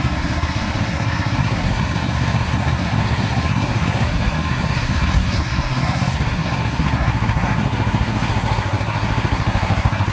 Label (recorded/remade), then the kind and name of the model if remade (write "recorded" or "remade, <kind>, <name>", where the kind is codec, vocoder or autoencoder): remade, codec, SNAC